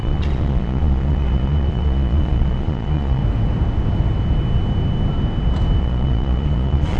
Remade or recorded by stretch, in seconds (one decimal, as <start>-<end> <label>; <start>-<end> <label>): 0.0-3.2 remade; 3.2-5.8 recorded; 5.8-7.0 remade